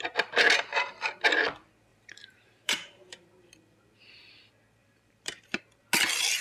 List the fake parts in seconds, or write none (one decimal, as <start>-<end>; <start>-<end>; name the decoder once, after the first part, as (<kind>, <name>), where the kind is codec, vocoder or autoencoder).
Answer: 1.9-3.5 (vocoder, BigVGAN v2); 4.8-5.6